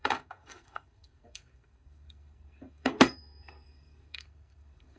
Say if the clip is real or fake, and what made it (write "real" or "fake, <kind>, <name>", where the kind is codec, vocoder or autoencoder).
fake, codec, SNAC